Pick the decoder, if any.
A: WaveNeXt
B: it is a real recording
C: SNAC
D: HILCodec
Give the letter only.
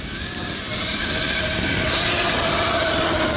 B